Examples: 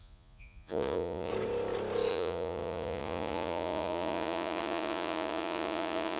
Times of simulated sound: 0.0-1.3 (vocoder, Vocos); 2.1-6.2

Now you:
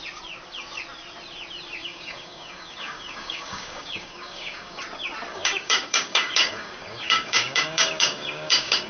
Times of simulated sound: 1.8-4.8 (codec, DAC); 5.3-8.9

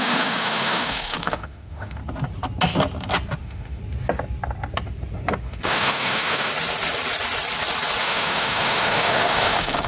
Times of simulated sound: 0.0-2.0 (autoencoder, DAC-VAE); 3.4-3.8; 5.4-6.5; 8.0-9.9

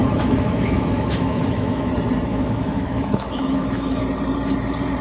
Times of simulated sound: 0.0-1.9 (autoencoder, DAC-VAE); 2.3-4.0

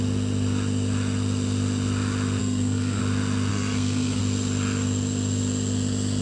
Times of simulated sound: 2.4-3.0 (codec, SNAC); 3.5-4.2

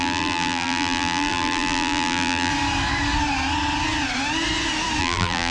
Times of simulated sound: 0.0-2.5 (vocoder, BigVGAN v2); 5.0-5.5

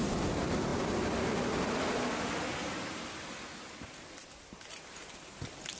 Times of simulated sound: none

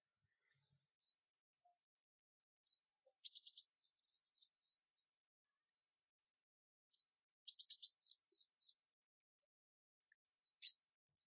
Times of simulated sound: 2.9-6.4 (vocoder, Vocos); 10.4-10.9